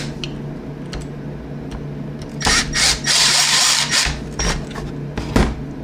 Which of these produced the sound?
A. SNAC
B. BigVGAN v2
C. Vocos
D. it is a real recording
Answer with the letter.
D